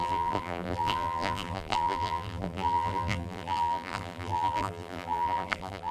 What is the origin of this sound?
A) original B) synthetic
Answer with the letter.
B